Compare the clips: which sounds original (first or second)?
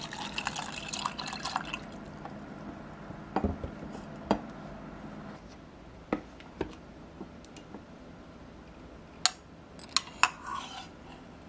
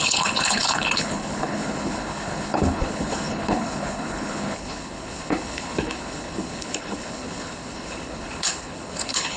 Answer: first